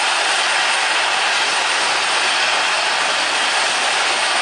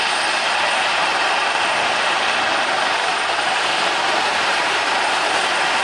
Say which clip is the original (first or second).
first